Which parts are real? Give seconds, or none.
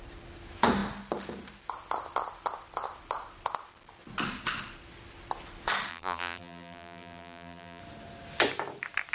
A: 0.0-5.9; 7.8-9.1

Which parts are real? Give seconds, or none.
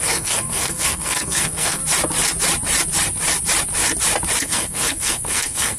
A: 1.8-4.4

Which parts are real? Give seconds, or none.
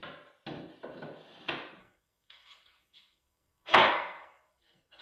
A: 0.0-1.8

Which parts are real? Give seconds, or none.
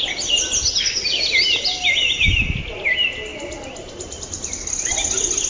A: 0.0-5.5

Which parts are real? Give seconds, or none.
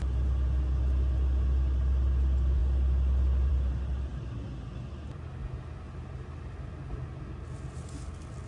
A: 0.0-8.5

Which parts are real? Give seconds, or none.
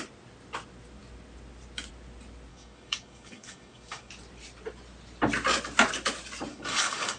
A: 0.0-2.5; 4.1-6.5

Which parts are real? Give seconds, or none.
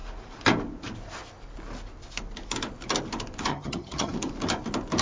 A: 0.0-3.5; 4.1-5.0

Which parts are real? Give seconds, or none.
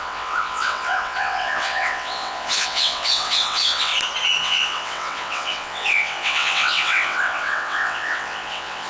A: 3.9-4.4